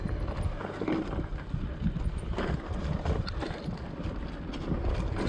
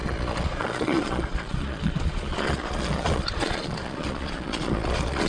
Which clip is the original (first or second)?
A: first